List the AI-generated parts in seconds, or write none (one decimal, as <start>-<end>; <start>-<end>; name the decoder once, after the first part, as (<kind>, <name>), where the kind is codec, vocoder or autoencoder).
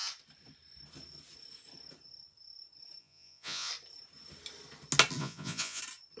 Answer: 3.0-3.7 (vocoder, Vocos); 5.2-5.8